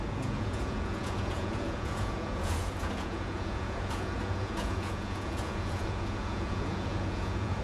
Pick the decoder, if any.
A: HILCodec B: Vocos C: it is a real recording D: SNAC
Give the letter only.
B